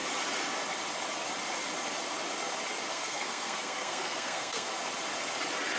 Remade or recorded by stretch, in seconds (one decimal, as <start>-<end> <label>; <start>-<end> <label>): 0.0-2.9 recorded; 2.9-4.7 remade; 4.7-5.8 recorded